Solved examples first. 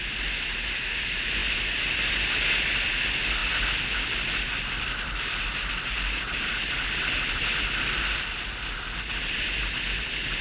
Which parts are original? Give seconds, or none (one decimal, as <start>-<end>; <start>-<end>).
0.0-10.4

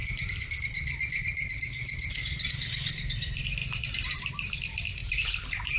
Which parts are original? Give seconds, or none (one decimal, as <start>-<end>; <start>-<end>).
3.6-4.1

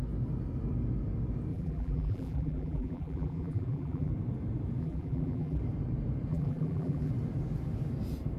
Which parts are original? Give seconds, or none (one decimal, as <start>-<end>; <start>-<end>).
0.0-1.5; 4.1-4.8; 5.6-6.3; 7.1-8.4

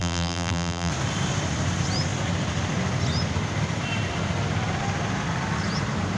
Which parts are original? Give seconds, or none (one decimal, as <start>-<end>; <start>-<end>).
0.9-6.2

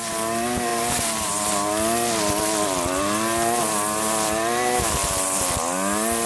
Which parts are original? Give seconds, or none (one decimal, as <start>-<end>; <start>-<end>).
0.0-6.3